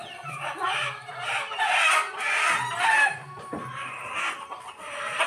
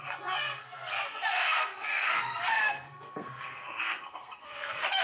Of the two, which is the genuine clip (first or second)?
first